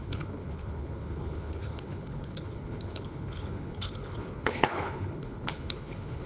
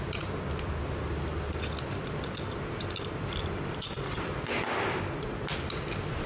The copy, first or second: first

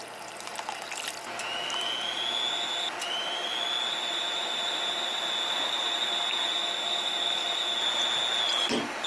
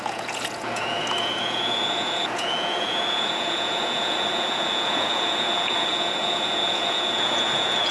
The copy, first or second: second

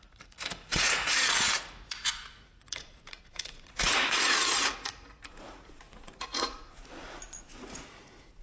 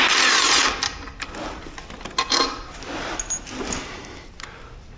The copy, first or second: first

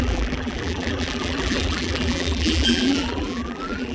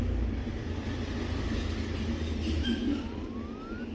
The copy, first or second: first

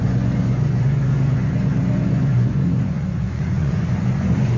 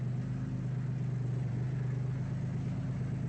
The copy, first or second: first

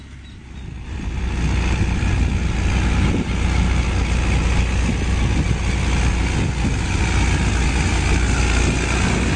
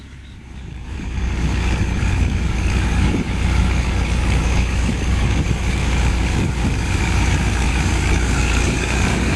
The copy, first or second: second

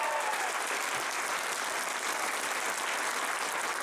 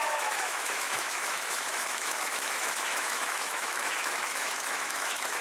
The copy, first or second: second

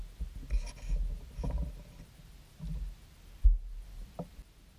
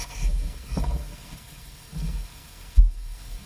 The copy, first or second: second